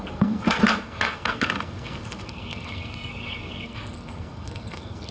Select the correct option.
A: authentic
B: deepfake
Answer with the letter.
B